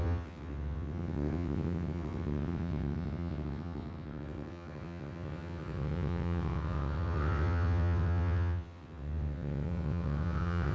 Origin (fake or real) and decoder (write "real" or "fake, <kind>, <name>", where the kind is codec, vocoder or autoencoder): fake, vocoder, WaveNeXt